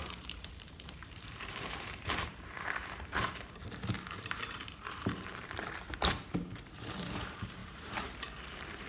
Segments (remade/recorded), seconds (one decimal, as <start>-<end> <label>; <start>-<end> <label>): 0.0-8.9 remade